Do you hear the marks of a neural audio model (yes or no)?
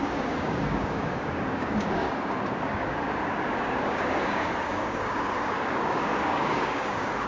yes